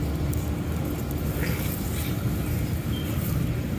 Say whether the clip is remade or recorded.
recorded